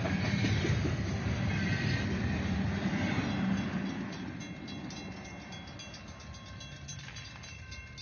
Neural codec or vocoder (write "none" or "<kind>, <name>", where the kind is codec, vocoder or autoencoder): none